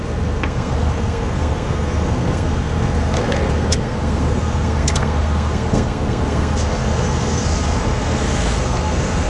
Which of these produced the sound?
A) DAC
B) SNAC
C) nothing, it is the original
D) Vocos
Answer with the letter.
B